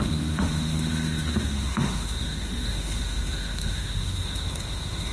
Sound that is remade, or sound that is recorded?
remade